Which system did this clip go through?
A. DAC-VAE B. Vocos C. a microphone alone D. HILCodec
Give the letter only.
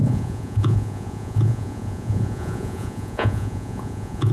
B